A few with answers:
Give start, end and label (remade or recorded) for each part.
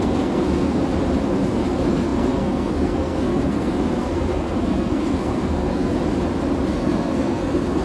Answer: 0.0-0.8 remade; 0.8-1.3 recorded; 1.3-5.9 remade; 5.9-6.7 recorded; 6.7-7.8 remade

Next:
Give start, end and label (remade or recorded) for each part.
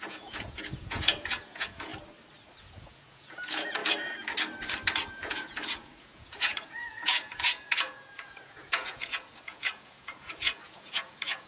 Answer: 0.0-1.9 remade; 1.9-2.6 recorded; 2.6-3.8 remade; 3.8-5.1 recorded; 5.1-11.5 remade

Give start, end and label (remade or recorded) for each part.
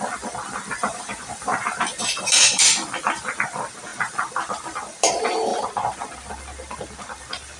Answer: 0.0-0.8 recorded; 0.8-2.6 remade; 2.6-5.5 recorded; 5.5-6.3 remade; 6.3-7.6 recorded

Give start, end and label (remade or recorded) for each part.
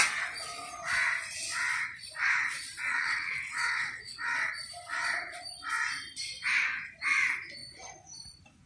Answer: 0.0-2.9 recorded; 2.9-4.5 remade; 4.5-8.7 recorded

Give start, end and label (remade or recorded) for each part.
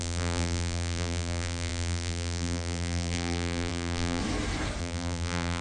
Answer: 0.0-4.2 remade; 4.2-4.8 recorded; 4.8-5.6 remade